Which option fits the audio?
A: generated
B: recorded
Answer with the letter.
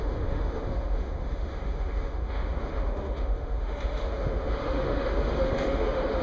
A